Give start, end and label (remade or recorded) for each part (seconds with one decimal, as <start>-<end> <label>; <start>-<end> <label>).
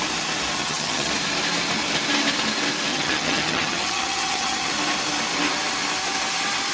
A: 0.0-0.6 recorded; 0.6-1.1 remade; 1.1-2.9 recorded; 2.9-4.7 remade; 4.7-6.7 recorded